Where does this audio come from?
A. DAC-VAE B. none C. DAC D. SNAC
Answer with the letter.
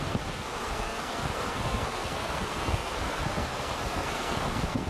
D